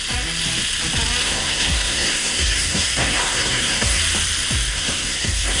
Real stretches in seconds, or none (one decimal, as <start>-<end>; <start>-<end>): 0.0-1.2; 4.0-4.7